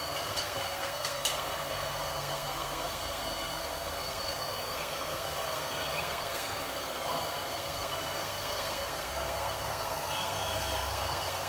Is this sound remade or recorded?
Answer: remade